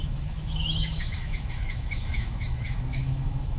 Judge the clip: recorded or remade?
remade